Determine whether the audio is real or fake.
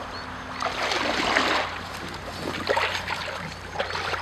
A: real